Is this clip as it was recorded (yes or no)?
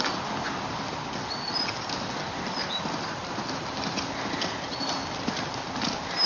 yes